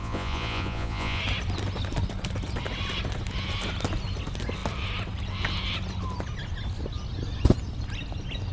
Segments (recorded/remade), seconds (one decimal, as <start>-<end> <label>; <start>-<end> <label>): 0.0-1.2 remade; 1.2-8.5 recorded